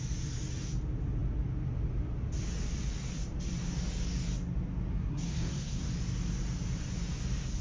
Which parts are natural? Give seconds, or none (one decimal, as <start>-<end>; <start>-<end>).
0.0-4.9; 5.9-7.6

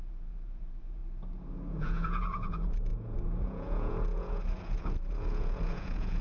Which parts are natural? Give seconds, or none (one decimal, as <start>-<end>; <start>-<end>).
1.0-1.7

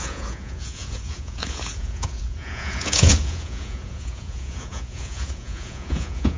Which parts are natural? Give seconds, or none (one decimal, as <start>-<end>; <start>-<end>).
none

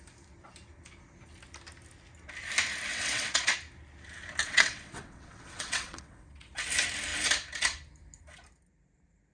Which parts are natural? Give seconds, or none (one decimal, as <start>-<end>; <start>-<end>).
0.0-2.9; 3.5-4.4; 6.5-9.3

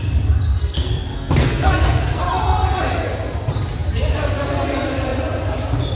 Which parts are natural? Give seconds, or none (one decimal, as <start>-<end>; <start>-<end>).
0.0-0.6; 2.2-6.0

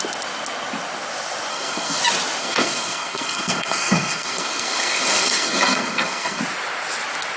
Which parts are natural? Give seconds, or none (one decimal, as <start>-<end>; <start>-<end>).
0.0-1.5; 2.0-2.4; 6.4-7.4